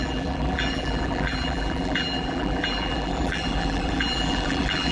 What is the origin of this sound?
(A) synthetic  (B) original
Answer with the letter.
A